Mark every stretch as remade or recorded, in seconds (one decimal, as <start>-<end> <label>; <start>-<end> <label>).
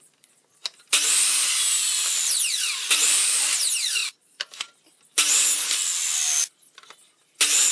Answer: 0.0-7.7 recorded